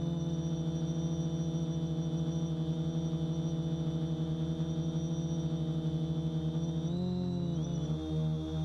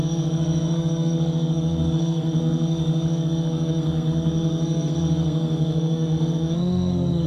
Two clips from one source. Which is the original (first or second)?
first